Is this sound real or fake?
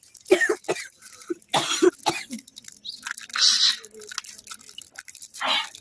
real